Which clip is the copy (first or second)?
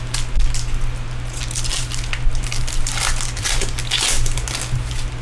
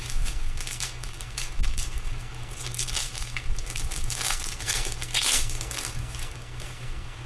second